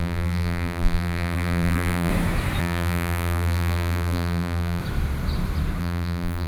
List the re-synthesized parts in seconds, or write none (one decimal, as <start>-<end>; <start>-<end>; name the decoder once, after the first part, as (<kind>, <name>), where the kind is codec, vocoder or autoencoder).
0.0-2.1 (vocoder, BigVGAN v2); 2.6-4.8; 5.8-6.5

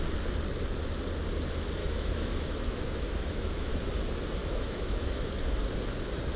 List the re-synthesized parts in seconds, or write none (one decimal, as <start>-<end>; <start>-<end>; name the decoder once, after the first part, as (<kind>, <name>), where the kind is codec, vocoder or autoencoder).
1.8-3.8 (autoencoder, DAC-VAE); 4.4-5.3

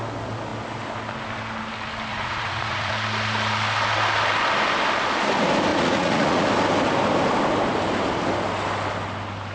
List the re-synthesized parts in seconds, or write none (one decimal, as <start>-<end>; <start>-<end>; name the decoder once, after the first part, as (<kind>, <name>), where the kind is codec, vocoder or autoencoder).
2.1-2.9 (vocoder, Vocos); 5.7-6.5

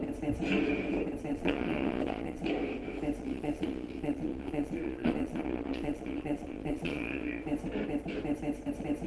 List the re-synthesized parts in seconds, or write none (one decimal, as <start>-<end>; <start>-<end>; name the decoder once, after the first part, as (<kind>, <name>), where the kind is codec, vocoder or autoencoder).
1.3-2.4 (vocoder, Vocos); 3.2-7.4

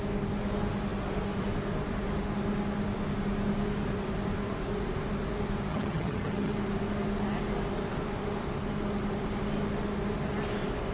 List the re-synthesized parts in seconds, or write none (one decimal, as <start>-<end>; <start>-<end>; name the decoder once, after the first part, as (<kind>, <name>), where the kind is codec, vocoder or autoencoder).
5.7-6.5 (vocoder, HiFi-GAN)

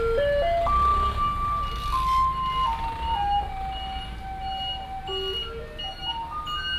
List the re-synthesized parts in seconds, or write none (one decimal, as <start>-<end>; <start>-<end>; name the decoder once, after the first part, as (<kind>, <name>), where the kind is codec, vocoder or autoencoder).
none